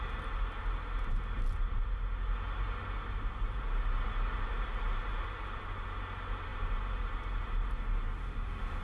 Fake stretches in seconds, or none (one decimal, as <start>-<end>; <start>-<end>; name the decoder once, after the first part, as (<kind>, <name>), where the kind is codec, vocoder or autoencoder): 8.2-8.8 (autoencoder, DAC-VAE)